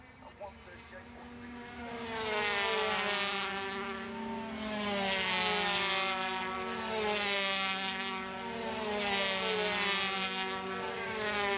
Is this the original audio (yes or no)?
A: yes